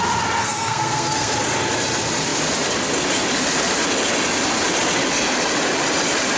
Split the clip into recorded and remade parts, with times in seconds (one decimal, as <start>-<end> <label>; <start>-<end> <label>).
0.0-0.4 recorded; 0.4-1.3 remade; 1.3-6.4 recorded